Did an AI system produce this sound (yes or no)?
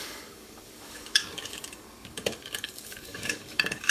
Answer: yes